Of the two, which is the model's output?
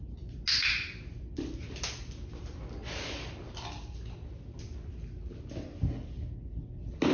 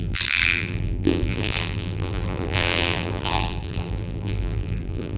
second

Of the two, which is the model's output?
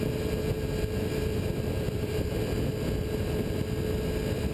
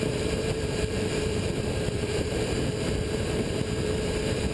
second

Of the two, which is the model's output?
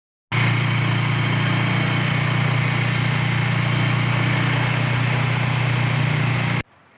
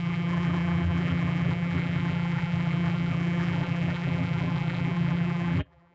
second